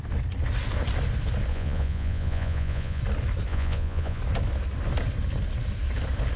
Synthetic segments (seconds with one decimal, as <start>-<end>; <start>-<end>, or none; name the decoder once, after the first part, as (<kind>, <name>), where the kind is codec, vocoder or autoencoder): 1.5-3.0 (vocoder, Vocos); 3.5-4.2